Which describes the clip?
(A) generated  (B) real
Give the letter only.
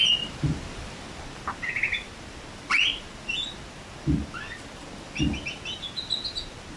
B